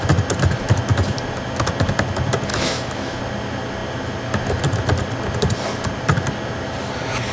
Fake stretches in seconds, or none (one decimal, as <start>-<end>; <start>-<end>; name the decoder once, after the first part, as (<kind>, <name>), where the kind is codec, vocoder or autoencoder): 2.5-3.2 (autoencoder, DAC-VAE)